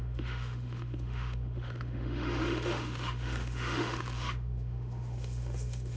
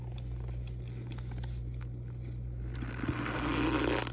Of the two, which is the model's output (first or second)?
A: first